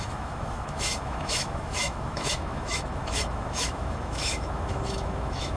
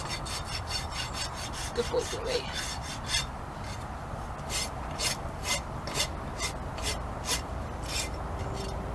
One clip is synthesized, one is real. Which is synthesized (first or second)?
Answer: first